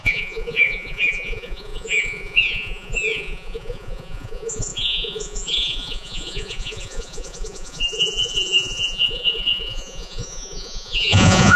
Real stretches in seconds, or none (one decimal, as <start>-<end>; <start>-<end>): none